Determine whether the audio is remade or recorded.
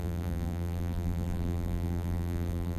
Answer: remade